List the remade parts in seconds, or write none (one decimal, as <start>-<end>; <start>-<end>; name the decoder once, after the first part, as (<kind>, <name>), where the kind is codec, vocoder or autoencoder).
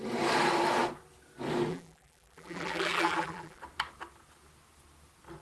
1.7-3.6 (vocoder, BigVGAN v2)